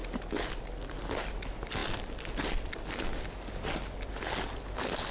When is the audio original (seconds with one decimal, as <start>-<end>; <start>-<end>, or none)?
0.0-5.1